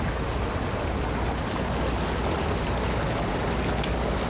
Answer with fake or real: real